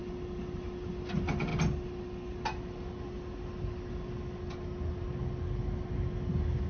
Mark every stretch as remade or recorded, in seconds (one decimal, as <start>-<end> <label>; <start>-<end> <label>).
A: 0.0-6.7 recorded

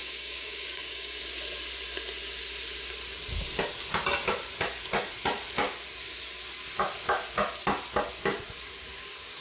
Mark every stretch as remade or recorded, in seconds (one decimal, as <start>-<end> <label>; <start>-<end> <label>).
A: 0.0-1.2 remade; 1.2-9.4 recorded

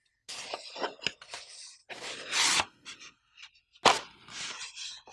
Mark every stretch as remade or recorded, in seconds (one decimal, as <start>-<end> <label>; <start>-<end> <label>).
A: 0.0-5.1 recorded

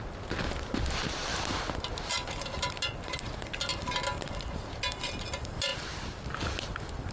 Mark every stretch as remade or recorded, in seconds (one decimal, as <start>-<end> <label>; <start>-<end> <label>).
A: 0.0-7.1 recorded

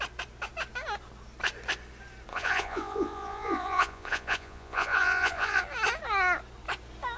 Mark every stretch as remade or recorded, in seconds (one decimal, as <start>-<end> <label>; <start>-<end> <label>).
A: 0.0-2.3 recorded; 2.3-5.6 remade; 5.6-7.2 recorded

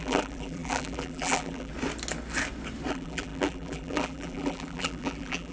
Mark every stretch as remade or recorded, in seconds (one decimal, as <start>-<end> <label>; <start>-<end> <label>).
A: 0.0-1.7 remade; 1.7-2.9 recorded; 2.9-5.5 remade

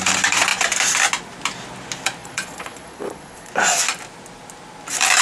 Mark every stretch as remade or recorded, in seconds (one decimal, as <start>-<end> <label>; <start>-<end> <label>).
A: 0.0-2.2 recorded; 2.2-3.5 remade; 3.5-5.2 recorded

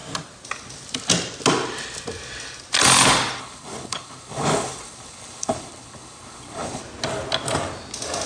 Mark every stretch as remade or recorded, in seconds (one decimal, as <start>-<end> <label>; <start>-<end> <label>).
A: 0.0-3.4 recorded; 3.4-6.8 remade; 6.8-8.3 recorded